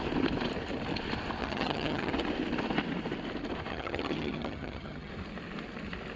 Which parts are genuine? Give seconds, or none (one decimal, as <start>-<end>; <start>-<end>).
0.0-1.4; 2.1-3.7; 5.1-6.2